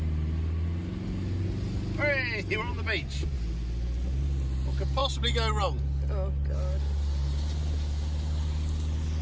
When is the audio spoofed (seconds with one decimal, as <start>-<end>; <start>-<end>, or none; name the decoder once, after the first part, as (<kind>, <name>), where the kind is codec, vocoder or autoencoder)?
none